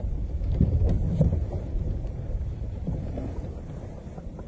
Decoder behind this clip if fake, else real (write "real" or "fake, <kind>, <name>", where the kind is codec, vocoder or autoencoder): fake, vocoder, BigVGAN v2